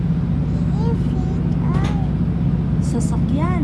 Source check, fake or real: real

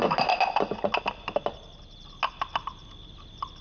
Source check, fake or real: real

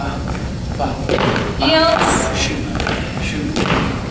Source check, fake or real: real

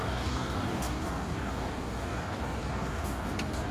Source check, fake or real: fake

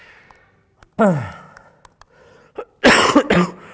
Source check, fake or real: real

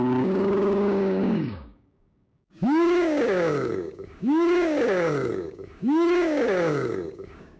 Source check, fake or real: fake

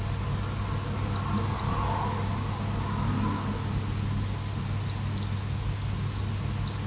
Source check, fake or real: real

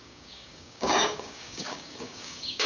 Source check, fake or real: fake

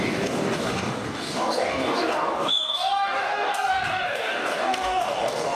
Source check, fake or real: fake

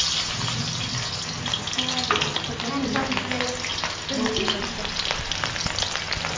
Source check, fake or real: real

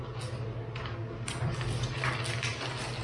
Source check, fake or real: real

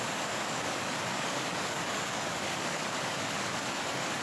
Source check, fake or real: fake